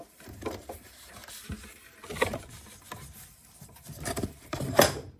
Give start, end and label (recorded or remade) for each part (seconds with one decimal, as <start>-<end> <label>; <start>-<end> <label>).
0.0-1.2 remade; 1.2-4.3 recorded; 4.3-5.2 remade